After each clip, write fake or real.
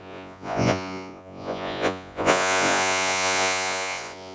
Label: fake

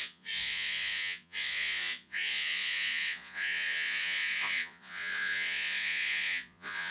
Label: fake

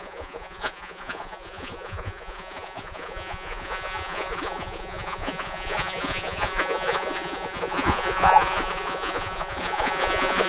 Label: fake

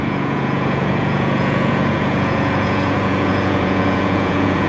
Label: fake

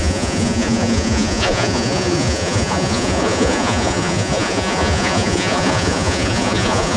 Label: fake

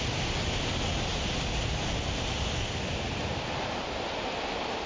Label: real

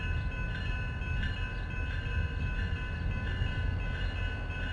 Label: real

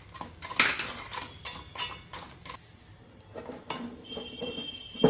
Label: real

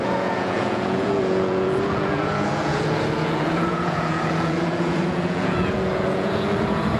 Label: fake